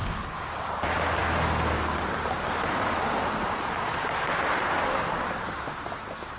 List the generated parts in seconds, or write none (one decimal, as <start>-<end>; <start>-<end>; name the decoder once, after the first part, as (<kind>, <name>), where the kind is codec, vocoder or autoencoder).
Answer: none